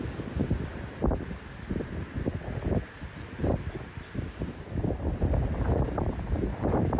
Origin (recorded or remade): recorded